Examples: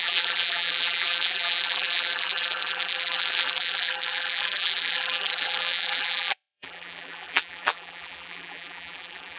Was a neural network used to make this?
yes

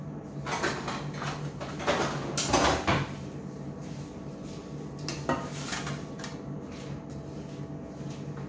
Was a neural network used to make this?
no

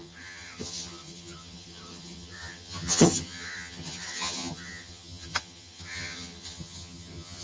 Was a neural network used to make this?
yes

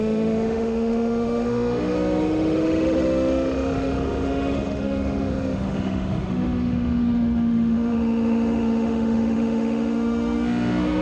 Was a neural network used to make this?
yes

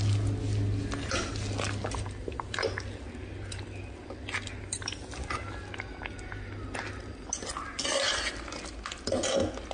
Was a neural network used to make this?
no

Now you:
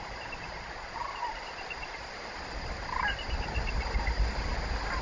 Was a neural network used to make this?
no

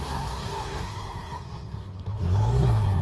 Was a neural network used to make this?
yes